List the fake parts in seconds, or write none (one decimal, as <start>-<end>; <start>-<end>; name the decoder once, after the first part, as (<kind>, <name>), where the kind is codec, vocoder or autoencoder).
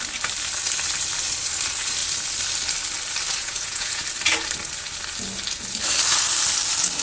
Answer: 3.4-4.0 (vocoder, Vocos)